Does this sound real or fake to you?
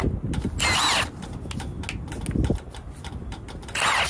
real